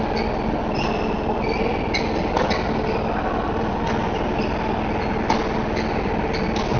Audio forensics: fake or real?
real